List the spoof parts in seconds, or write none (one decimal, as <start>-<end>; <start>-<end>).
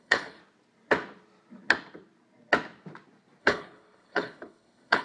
0.0-0.4; 3.4-5.0